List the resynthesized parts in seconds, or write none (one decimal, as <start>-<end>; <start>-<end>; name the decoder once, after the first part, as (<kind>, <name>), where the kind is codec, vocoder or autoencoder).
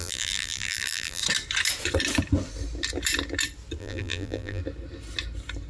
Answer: 0.0-1.2 (vocoder, BigVGAN v2); 3.8-4.6